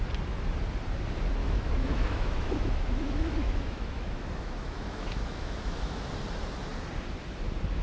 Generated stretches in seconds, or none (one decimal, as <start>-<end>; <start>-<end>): 1.4-6.1